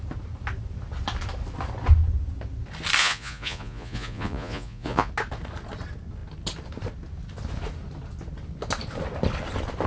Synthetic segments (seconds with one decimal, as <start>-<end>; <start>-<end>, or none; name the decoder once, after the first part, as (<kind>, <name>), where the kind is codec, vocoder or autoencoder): 3.0-5.1 (vocoder, Vocos)